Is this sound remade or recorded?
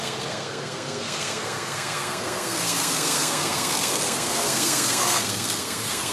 remade